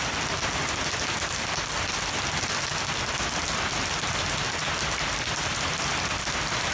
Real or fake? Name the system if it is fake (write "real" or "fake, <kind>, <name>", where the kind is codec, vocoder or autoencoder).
real